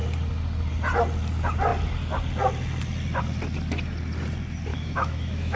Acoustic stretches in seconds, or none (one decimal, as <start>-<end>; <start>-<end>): 0.0-4.7